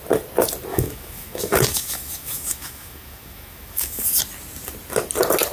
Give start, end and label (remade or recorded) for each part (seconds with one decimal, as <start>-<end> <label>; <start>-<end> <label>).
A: 0.0-0.7 recorded; 0.7-4.0 remade; 4.0-5.5 recorded